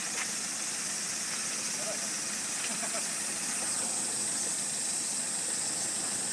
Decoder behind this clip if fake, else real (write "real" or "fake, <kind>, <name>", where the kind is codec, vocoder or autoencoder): real